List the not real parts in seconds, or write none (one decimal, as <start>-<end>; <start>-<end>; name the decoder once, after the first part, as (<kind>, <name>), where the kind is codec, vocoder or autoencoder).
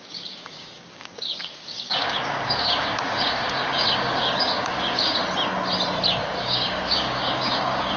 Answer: 0.0-5.2 (codec, DAC); 6.2-8.0